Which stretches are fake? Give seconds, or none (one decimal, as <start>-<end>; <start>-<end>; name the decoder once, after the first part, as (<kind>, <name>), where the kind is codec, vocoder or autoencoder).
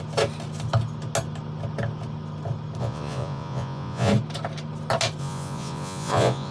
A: 2.8-4.1 (vocoder, Vocos); 5.2-6.5